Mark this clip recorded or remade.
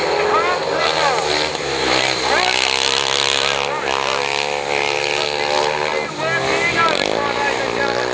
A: recorded